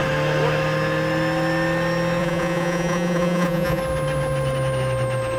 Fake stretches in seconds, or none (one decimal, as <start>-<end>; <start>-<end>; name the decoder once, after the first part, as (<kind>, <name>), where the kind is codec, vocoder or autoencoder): 2.2-3.8 (vocoder, Vocos)